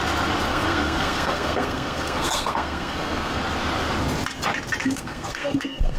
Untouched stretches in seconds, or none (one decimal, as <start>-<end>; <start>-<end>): 0.0-0.5; 3.4-4.8